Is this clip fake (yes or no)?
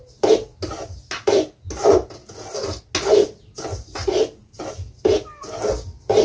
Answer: no